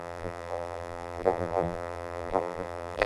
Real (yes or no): no